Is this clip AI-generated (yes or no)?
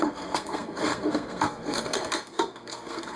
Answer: yes